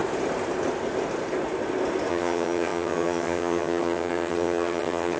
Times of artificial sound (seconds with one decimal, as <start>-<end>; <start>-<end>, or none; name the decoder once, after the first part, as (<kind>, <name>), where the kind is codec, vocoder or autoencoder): 2.1-5.2 (vocoder, HiFi-GAN)